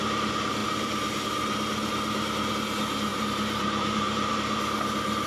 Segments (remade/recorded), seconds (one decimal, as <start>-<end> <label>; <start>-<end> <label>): 0.0-3.1 recorded; 3.1-4.3 remade; 4.3-5.3 recorded

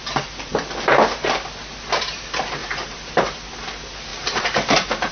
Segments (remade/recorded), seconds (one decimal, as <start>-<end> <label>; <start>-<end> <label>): 0.0-2.6 recorded; 2.6-3.2 remade; 3.2-4.1 recorded; 4.1-5.1 remade

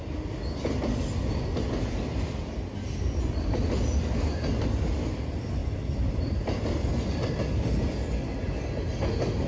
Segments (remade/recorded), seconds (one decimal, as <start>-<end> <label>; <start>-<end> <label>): 0.0-5.6 recorded; 5.6-7.4 remade; 7.4-9.5 recorded

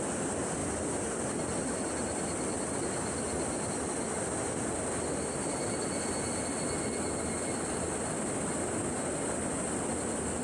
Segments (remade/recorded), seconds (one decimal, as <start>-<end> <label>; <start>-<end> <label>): 0.0-10.4 recorded

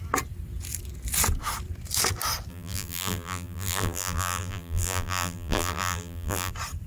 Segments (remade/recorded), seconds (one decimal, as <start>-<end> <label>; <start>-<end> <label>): 0.0-2.5 recorded; 2.5-6.5 remade; 6.5-6.9 recorded